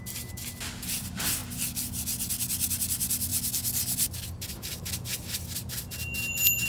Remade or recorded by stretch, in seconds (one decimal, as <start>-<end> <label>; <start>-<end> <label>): 0.0-6.7 recorded